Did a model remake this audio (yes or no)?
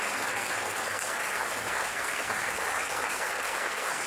yes